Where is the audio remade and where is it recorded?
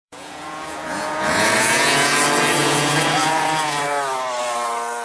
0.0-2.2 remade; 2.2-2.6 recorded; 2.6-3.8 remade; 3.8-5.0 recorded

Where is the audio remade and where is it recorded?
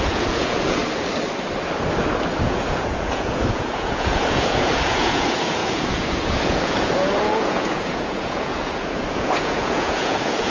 0.0-0.8 remade; 0.8-2.4 recorded; 2.4-10.5 remade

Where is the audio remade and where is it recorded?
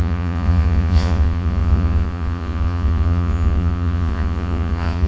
0.0-5.1 remade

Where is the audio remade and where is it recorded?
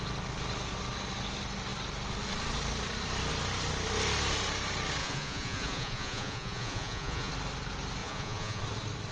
0.0-5.0 recorded; 5.0-7.3 remade; 7.3-8.0 recorded; 8.0-8.6 remade; 8.6-9.1 recorded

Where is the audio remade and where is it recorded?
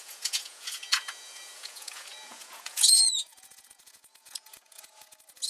0.0-5.5 remade